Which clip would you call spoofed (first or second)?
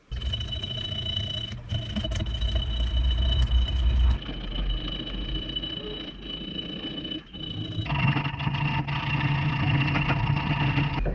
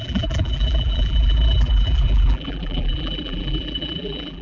second